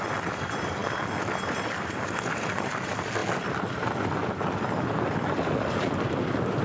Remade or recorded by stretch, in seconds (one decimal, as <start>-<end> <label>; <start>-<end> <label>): 0.0-0.8 remade; 0.8-1.7 recorded; 1.7-6.6 remade